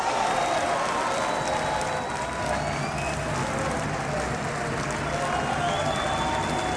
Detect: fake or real real